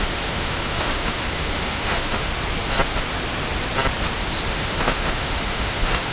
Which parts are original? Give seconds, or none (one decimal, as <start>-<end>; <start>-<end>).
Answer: 2.3-4.5